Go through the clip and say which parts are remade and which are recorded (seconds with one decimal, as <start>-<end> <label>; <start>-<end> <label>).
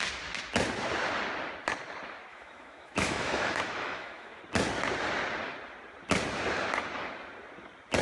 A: 0.0-2.3 recorded; 2.3-4.4 remade; 4.4-8.0 recorded